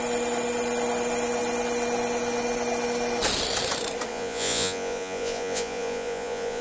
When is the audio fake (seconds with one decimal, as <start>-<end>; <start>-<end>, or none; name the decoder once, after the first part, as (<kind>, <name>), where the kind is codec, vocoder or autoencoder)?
4.1-6.6 (vocoder, Vocos)